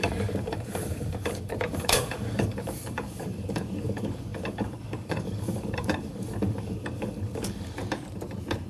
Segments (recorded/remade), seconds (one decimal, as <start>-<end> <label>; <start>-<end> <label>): 0.0-7.8 remade; 7.8-8.7 recorded